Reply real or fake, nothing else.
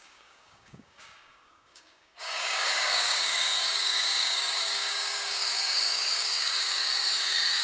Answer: fake